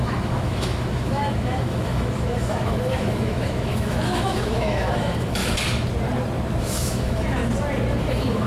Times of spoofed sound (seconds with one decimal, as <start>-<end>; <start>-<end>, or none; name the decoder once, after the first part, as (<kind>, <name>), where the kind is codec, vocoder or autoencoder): 0.0-5.4 (autoencoder, DAC-VAE); 6.6-7.4; 8.0-8.5